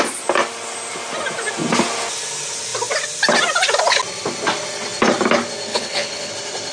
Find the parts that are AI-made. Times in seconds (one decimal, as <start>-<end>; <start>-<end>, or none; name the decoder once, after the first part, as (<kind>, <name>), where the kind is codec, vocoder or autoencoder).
5.7-6.3 (codec, HILCodec)